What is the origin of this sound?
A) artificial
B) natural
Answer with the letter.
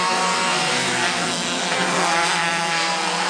A